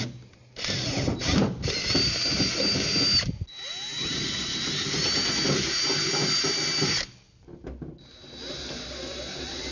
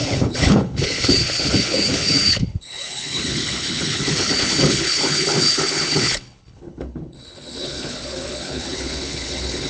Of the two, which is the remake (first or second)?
second